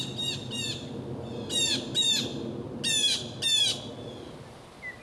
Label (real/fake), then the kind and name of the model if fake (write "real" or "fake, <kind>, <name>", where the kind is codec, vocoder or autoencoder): real